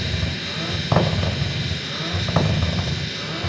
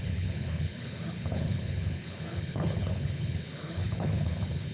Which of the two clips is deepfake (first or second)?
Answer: second